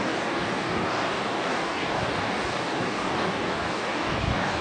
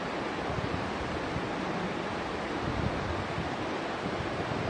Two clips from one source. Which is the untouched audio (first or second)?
second